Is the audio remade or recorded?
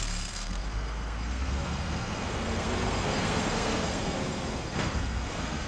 remade